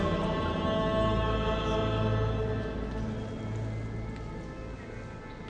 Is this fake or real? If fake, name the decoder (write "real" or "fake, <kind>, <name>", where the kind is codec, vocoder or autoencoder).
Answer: real